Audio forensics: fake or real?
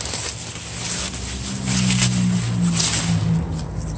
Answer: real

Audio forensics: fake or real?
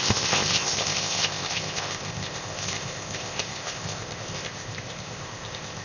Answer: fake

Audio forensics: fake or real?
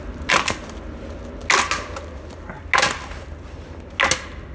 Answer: real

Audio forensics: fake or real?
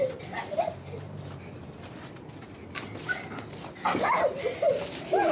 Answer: real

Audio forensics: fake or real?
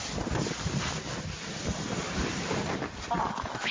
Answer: real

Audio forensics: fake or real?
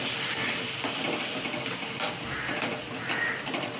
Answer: real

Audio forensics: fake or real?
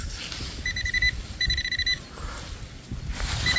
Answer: real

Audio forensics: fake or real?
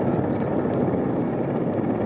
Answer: real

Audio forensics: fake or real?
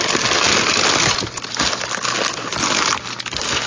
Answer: real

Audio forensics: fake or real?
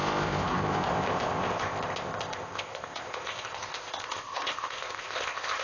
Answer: fake